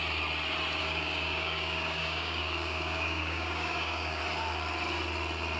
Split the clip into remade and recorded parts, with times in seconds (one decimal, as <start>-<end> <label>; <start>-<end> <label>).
0.0-0.8 recorded; 0.8-4.2 remade; 4.2-5.6 recorded